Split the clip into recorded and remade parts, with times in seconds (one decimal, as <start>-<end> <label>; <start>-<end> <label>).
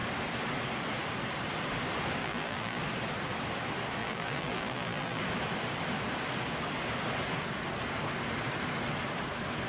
0.0-2.2 recorded; 2.2-2.8 remade; 2.8-4.0 recorded; 4.0-5.2 remade; 5.2-9.7 recorded